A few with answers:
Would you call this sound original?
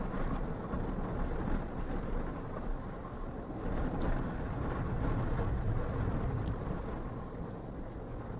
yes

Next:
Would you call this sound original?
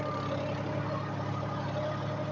yes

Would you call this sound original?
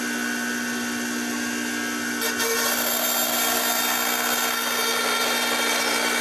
yes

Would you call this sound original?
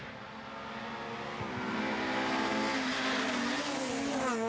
yes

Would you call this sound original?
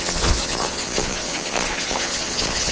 no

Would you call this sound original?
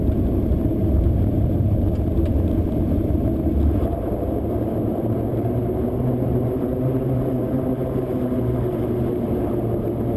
no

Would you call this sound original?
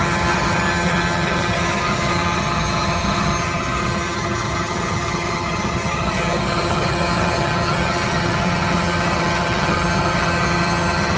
no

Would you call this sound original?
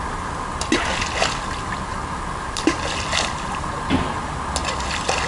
yes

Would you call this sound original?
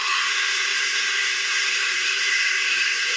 no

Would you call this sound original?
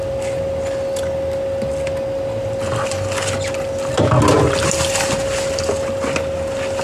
yes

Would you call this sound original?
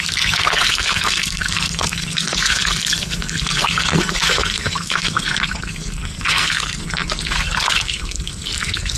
no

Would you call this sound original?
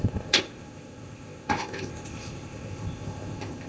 no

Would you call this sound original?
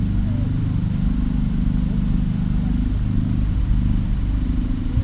yes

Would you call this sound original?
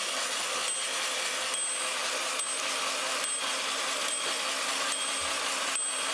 yes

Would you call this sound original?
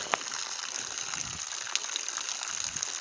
yes